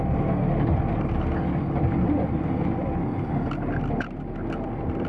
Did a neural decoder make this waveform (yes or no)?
no